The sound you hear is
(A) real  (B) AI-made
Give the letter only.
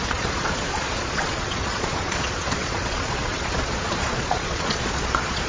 B